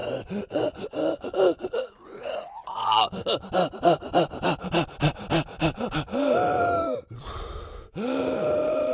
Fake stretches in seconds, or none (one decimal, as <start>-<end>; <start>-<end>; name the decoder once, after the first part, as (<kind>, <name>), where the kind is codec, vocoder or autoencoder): 0.0-3.0 (vocoder, Vocos)